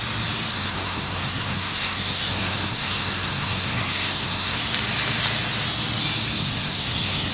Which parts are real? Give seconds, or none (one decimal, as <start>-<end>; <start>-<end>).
0.0-0.5; 4.6-6.4